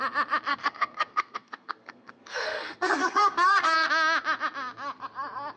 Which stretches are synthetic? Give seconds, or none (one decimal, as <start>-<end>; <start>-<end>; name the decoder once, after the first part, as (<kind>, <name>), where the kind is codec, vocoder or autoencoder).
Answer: 0.5-3.9 (codec, SNAC)